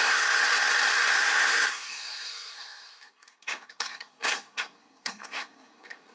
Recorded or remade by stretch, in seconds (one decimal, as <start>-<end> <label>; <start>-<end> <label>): 0.0-0.4 remade; 0.4-1.1 recorded; 1.1-6.1 remade